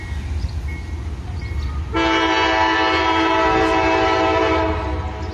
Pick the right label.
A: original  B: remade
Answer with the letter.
A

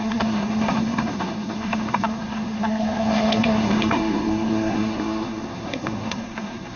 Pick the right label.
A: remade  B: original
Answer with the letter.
A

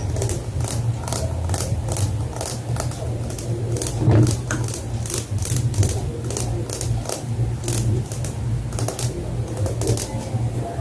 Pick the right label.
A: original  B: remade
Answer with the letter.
A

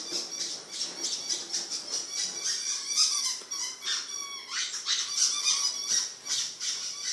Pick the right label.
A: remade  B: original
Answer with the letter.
B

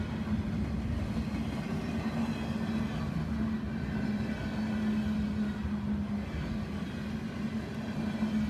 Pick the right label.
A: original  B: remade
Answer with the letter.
A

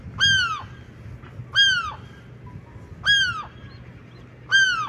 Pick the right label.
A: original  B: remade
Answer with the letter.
A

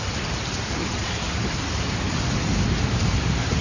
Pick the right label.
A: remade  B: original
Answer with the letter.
B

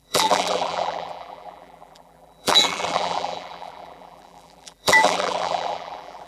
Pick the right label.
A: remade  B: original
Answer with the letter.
A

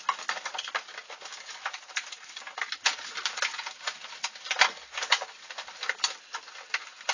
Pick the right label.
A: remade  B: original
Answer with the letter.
B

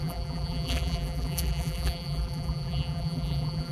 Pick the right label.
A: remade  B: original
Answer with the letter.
A